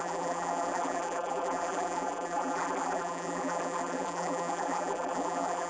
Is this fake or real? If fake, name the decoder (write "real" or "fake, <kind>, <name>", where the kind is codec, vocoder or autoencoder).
fake, vocoder, BigVGAN v2